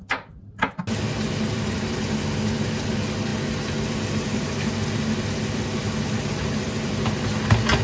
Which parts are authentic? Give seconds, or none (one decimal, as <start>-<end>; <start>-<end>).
0.0-7.8